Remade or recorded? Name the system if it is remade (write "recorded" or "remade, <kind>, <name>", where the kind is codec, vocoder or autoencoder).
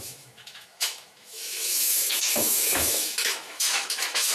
remade, autoencoder, DAC-VAE